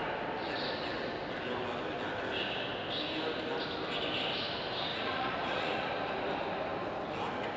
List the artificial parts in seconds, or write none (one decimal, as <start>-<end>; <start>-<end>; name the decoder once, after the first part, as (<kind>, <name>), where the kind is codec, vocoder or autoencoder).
4.9-5.9 (vocoder, Vocos)

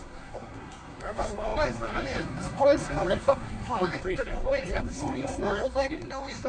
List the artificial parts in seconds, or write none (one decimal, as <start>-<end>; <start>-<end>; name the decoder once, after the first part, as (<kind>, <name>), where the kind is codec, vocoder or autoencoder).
0.0-6.5 (codec, SNAC)

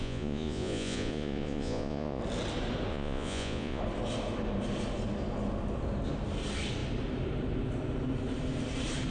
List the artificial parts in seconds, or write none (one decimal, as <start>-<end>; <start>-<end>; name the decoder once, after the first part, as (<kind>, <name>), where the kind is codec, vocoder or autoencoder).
0.0-2.2 (vocoder, Vocos); 2.9-3.8

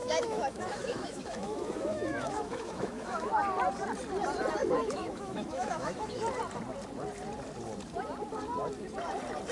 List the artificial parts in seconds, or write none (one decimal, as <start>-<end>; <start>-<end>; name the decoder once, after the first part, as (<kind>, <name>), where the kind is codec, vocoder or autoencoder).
0.0-3.3 (autoencoder, DAC-VAE); 4.6-6.2

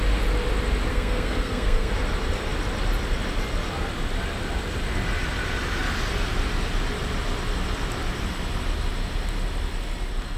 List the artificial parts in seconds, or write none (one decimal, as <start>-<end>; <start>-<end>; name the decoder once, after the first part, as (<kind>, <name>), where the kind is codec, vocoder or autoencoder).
0.9-1.9 (codec, SNAC)